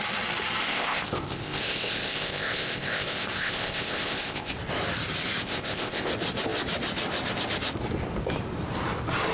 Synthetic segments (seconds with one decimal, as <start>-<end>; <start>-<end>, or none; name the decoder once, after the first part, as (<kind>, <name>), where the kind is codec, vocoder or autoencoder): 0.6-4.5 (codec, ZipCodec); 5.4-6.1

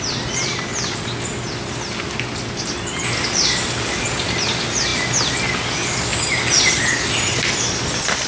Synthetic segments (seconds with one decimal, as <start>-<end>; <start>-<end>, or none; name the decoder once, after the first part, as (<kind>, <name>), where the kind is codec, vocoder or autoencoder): none

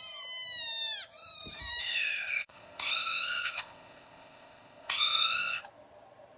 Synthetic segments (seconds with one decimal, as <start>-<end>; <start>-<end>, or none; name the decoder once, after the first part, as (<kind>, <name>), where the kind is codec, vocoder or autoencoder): 1.8-5.6 (codec, ZipCodec)

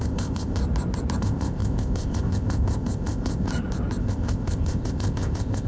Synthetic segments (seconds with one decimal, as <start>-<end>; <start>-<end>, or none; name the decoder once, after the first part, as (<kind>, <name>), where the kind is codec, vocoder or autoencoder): 0.0-0.6 (codec, ZipCodec); 1.2-3.5; 4.0-5.7

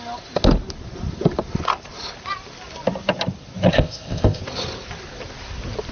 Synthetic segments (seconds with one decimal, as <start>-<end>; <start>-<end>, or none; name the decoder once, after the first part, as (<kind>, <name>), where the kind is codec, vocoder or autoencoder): 3.7-4.4 (codec, ZipCodec)

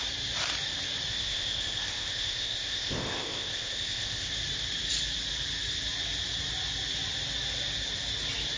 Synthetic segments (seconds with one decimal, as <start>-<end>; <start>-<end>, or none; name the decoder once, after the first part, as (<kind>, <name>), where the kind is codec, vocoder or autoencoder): 1.1-4.3 (codec, ZipCodec)